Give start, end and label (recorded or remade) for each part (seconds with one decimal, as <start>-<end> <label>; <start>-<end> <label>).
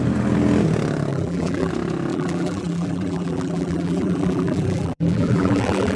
0.0-1.1 recorded; 1.1-1.7 remade; 1.7-2.1 recorded; 2.1-6.0 remade